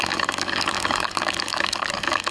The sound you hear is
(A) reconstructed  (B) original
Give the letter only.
A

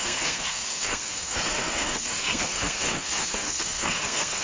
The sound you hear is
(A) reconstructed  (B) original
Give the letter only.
A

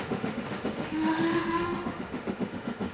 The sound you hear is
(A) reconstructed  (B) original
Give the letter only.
A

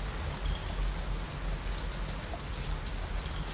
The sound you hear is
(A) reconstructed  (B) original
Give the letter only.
B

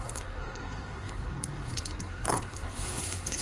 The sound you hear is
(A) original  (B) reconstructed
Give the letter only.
B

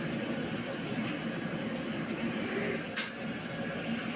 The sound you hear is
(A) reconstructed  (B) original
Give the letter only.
B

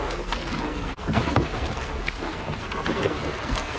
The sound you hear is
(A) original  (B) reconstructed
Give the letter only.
B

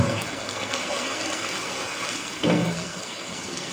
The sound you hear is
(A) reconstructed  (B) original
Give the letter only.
A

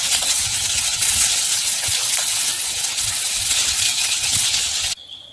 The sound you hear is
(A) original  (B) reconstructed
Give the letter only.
B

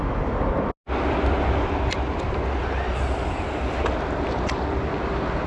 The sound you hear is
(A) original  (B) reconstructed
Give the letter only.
A